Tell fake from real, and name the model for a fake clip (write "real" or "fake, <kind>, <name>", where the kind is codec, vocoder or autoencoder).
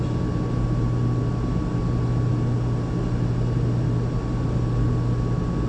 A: real